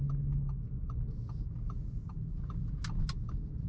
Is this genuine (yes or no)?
yes